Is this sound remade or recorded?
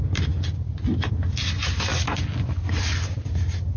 recorded